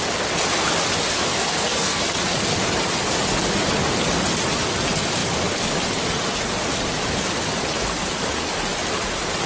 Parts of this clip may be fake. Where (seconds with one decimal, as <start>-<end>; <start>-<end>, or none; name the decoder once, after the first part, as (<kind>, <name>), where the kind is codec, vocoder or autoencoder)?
1.3-2.0 (codec, SNAC)